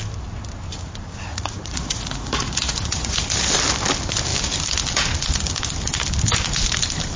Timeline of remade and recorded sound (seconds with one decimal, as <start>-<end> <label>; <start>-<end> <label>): 0.0-1.3 recorded; 1.3-3.2 remade; 3.2-7.2 recorded